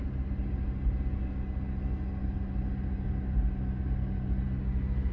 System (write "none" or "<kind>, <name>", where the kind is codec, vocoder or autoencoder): none